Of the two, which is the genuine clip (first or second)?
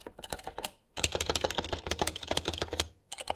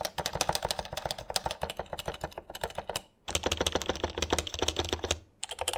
second